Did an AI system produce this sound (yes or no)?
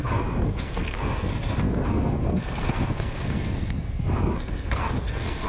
yes